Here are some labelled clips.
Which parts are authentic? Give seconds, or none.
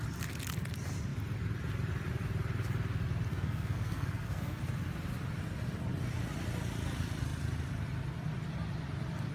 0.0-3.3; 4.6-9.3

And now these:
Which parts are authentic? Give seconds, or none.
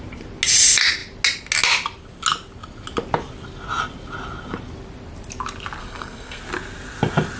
0.0-5.8; 6.4-7.4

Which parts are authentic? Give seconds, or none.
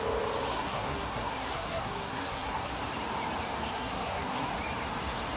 0.0-0.5; 2.7-3.7; 4.5-5.4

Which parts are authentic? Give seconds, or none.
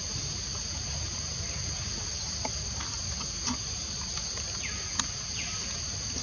0.0-6.2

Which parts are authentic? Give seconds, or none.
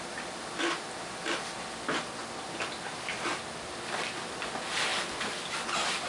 0.0-6.1